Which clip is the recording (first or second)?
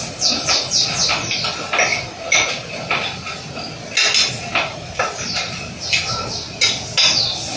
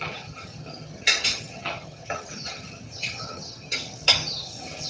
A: first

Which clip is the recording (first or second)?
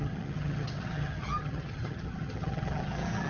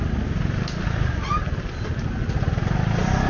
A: second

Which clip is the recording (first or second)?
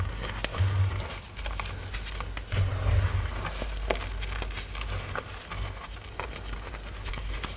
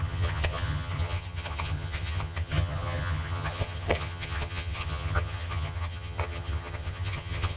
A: first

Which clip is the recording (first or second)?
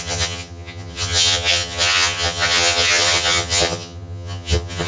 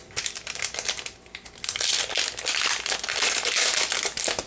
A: second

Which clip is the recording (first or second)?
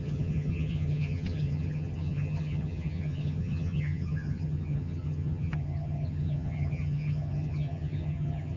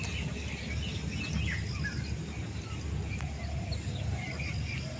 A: second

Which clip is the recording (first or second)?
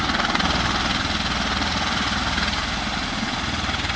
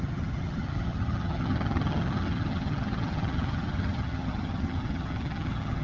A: first